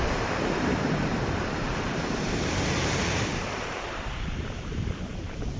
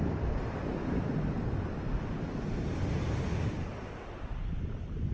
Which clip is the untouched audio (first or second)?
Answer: second